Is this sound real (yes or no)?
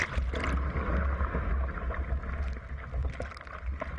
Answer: yes